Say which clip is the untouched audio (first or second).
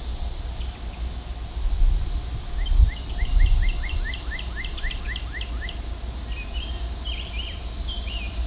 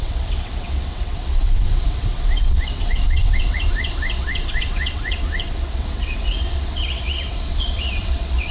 first